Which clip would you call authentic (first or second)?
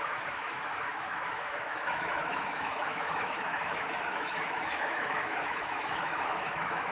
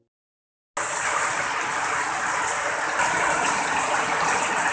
second